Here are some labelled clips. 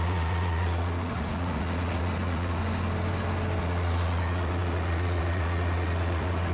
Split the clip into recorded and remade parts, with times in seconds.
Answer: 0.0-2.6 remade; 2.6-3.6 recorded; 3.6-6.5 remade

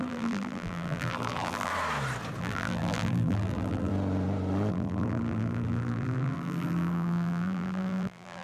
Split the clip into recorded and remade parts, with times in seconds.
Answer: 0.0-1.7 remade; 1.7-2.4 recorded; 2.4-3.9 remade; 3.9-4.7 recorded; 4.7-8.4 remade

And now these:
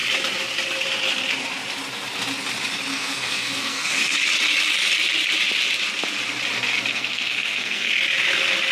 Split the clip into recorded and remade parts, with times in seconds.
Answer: 0.0-2.9 recorded; 2.9-4.1 remade; 4.1-6.9 recorded; 6.9-7.9 remade; 7.9-8.7 recorded

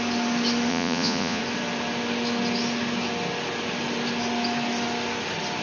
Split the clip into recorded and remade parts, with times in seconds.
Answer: 0.0-0.7 recorded; 0.7-1.4 remade; 1.4-5.6 recorded

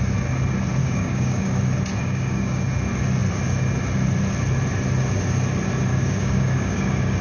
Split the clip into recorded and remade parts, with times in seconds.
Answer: 0.0-0.8 recorded; 0.8-1.6 remade; 1.6-2.0 recorded; 2.0-2.6 remade; 2.6-5.9 recorded; 5.9-7.2 remade